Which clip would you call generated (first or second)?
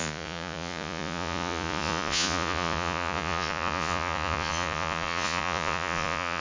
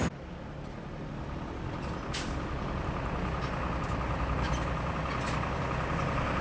first